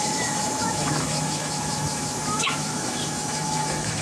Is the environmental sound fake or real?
fake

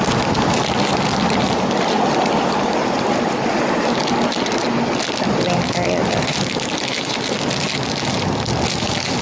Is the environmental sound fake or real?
real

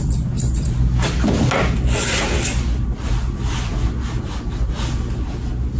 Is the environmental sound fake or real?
real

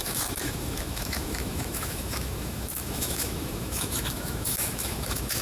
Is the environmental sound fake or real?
fake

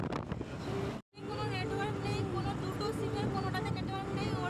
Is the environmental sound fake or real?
real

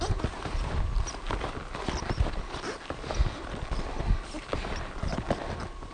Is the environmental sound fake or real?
real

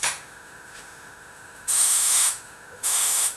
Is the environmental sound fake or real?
fake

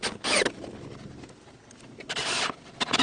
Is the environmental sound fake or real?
real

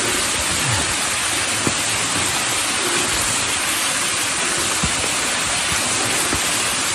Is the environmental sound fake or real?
real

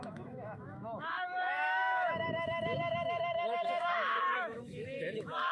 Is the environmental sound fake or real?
fake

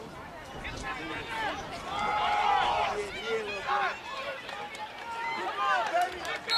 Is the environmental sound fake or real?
real